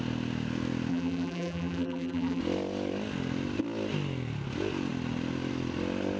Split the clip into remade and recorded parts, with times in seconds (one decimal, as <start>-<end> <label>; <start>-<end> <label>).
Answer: 0.0-0.9 recorded; 0.9-2.4 remade; 2.4-6.2 recorded